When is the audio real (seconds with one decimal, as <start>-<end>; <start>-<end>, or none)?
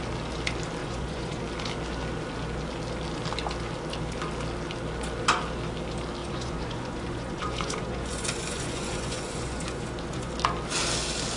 0.0-0.8; 1.4-6.2; 10.3-11.4